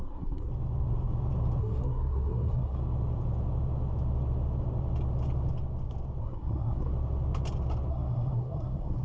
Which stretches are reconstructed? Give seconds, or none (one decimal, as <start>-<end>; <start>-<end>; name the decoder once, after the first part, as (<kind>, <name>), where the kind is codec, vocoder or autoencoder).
0.0-0.5 (codec, SNAC); 1.6-2.8; 6.2-6.9; 7.9-9.0